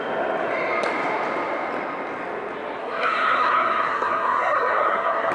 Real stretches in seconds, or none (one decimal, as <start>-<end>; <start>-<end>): 0.0-2.8